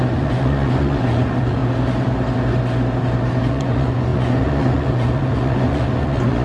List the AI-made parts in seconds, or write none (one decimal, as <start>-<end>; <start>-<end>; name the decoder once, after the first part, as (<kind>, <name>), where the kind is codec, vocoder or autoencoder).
0.0-1.6 (vocoder, Vocos); 3.5-6.4